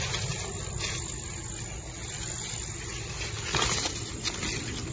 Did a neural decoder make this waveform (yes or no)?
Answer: no